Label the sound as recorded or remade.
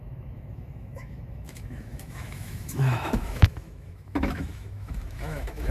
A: remade